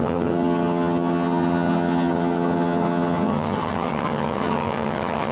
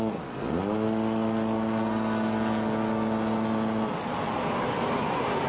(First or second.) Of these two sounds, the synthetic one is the first